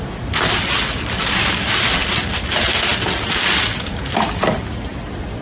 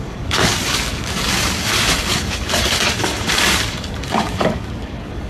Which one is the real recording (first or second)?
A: first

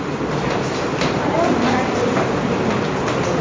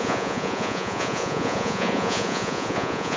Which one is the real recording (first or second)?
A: first